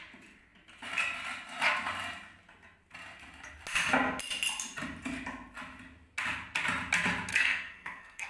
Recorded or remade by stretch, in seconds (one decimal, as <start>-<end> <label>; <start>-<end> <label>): 0.0-7.3 recorded; 7.3-8.3 remade